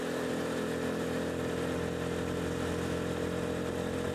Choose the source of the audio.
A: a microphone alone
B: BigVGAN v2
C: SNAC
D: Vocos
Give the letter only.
A